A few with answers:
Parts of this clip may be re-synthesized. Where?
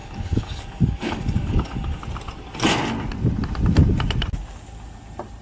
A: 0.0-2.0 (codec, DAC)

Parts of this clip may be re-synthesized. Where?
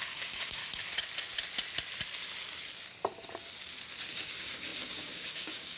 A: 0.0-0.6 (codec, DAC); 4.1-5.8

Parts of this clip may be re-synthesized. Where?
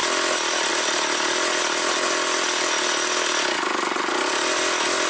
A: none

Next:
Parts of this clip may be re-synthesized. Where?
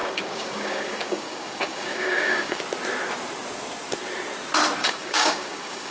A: 0.0-2.6 (codec, DAC); 4.8-5.9